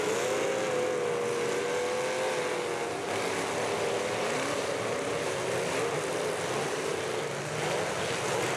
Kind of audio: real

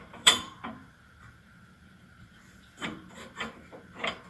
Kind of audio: fake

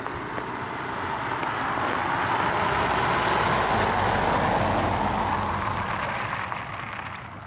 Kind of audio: real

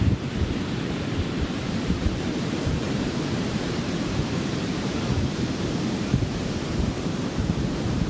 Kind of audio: fake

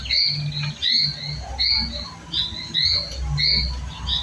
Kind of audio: real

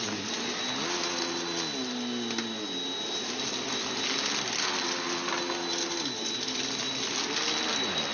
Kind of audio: real